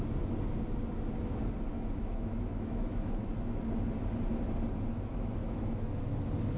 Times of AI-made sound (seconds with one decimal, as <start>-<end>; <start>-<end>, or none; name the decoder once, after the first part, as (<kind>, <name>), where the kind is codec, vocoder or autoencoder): 1.7-3.6 (autoencoder, DAC-VAE); 5.4-6.0